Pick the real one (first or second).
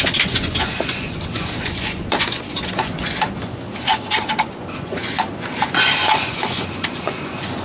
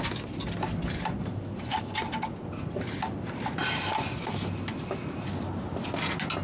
second